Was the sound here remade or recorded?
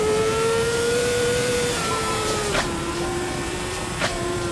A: remade